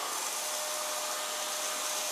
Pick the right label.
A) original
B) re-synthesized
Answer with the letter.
A